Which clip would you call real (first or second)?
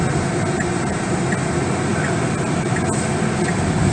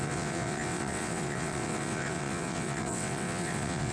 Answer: first